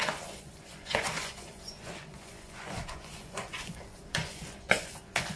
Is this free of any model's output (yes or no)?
no